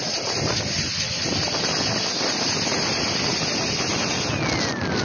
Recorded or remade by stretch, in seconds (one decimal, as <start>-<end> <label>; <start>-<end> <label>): 0.0-5.0 recorded